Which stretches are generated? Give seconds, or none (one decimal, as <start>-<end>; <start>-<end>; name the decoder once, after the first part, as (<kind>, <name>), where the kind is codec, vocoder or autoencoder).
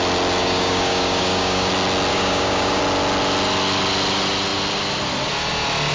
0.4-1.7 (codec, DAC); 2.1-2.8